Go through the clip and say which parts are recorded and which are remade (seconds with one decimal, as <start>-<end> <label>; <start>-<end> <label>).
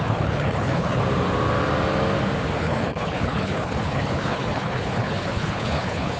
0.0-1.0 remade; 1.0-2.6 recorded; 2.6-6.2 remade